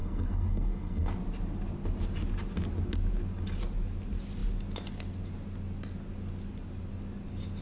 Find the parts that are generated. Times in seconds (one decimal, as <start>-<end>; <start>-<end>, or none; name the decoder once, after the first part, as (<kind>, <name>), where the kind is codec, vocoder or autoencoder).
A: 0.0-1.1 (codec, SNAC)